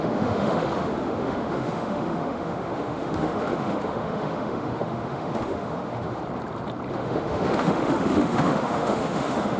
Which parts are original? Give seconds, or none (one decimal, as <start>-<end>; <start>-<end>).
6.2-6.9